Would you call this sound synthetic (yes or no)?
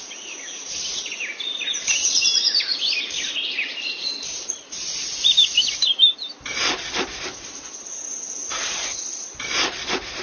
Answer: yes